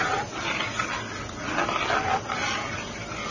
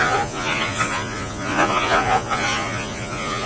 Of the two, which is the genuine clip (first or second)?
first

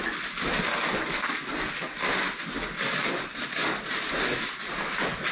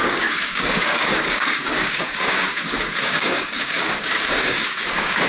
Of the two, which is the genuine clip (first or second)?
first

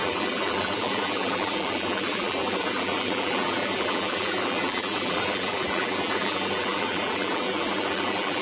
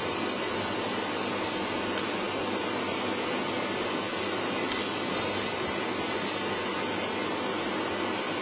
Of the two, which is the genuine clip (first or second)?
second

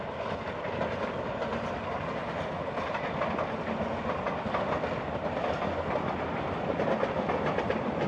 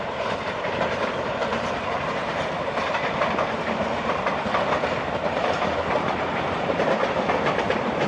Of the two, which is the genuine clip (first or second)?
first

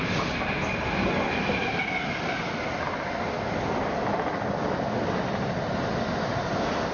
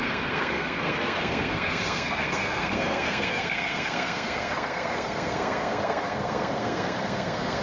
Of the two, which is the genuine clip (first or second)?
first